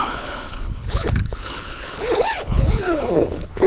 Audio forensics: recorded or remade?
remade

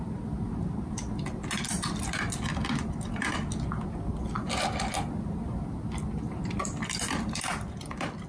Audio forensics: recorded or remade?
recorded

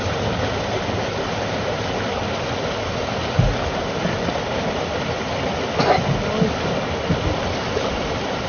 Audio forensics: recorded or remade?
recorded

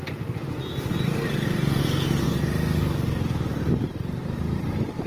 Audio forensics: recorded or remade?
recorded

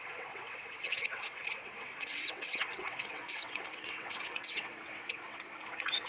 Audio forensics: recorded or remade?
remade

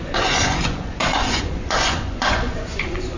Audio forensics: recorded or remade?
remade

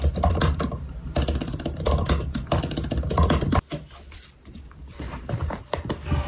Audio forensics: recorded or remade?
remade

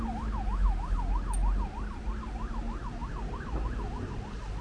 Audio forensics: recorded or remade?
recorded